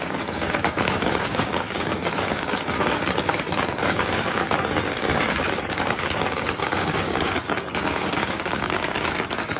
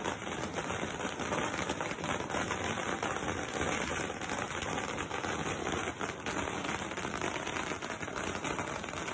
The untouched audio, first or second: second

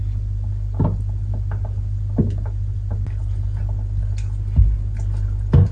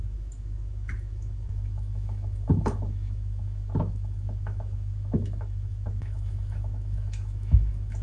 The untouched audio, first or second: first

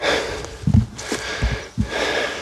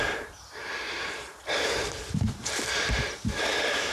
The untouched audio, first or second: first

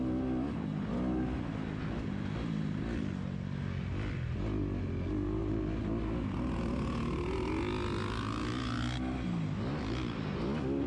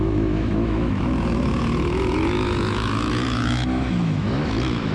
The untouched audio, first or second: first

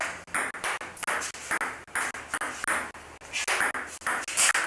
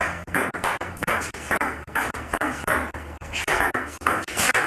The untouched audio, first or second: first